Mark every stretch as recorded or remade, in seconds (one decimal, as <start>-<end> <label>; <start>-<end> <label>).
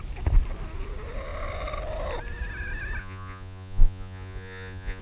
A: 0.0-3.0 recorded; 3.0-5.0 remade